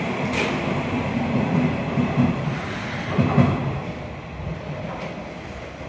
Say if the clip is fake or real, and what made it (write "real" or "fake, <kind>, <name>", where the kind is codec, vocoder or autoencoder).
real